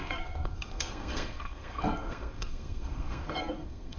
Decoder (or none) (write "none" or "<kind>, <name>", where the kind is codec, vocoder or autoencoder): codec, SNAC